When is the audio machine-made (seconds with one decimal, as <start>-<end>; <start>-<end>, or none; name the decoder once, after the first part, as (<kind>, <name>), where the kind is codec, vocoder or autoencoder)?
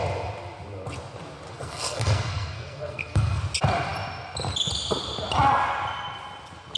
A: 1.5-3.4 (codec, SNAC)